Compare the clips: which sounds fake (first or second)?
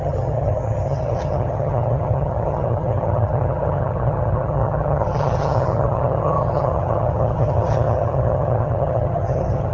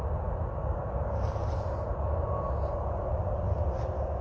first